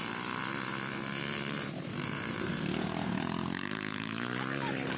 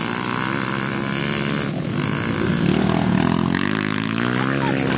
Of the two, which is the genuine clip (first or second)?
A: second